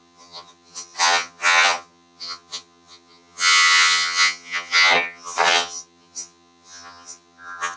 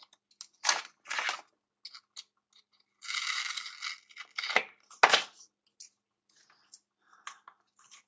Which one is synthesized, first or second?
first